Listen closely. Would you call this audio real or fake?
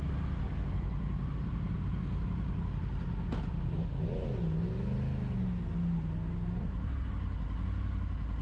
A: real